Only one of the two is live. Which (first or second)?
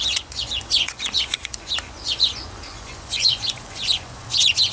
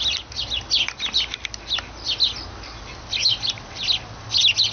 second